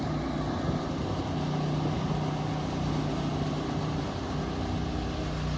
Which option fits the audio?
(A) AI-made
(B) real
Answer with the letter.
B